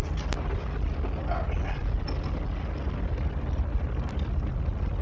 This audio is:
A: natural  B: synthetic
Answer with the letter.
A